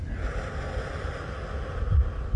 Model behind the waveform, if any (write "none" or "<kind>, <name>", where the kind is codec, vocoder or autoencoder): none